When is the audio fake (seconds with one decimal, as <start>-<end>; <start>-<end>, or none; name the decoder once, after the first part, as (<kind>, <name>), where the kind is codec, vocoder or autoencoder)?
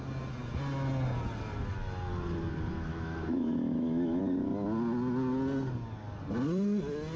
2.9-4.2 (autoencoder, DAC-VAE)